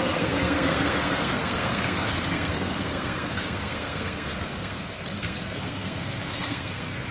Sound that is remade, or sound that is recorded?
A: remade